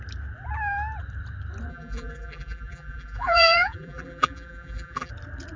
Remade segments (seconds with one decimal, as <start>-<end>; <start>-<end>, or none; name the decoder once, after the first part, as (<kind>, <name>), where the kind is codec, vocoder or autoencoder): 1.7-5.1 (vocoder, BigVGAN v2)